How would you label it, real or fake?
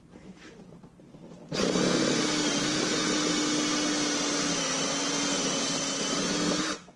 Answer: real